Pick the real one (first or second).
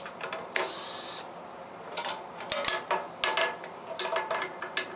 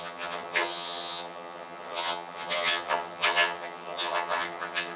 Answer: first